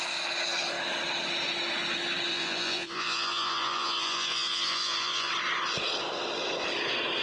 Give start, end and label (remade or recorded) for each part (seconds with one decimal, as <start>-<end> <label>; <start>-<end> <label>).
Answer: 0.0-2.3 recorded; 2.3-5.3 remade; 5.3-7.2 recorded